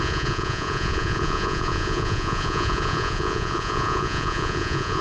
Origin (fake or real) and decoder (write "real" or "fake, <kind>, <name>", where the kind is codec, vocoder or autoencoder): fake, vocoder, Vocos